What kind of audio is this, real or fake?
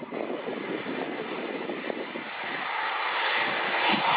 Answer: real